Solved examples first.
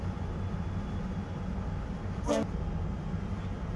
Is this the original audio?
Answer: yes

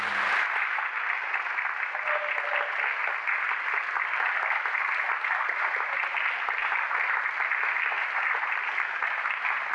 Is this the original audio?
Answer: yes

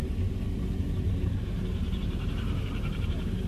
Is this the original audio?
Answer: no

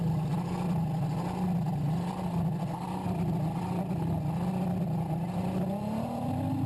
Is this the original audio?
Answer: yes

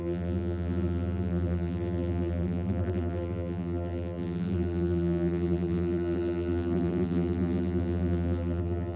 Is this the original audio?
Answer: no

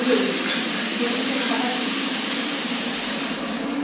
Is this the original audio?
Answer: no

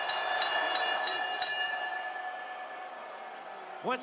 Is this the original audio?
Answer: yes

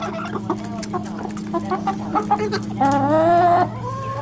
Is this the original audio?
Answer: yes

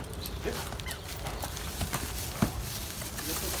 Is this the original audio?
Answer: no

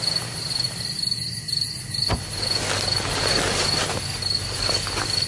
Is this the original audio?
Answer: yes